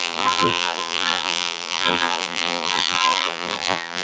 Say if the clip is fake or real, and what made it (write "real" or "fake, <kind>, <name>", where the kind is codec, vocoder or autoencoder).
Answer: fake, vocoder, BigVGAN v2